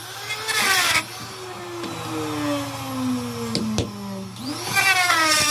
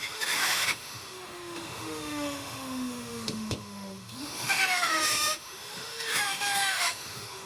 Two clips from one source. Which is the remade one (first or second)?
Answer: second